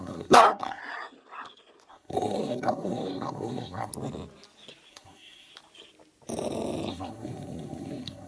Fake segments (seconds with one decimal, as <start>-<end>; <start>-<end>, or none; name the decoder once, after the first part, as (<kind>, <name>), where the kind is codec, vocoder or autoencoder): 0.0-0.8 (codec, SNAC); 1.9-3.9; 4.9-5.5; 6.9-8.3